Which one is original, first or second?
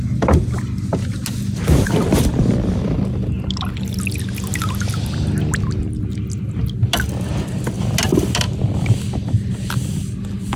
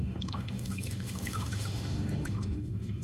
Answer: first